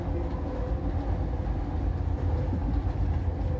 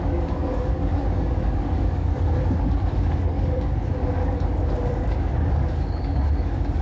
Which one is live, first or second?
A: first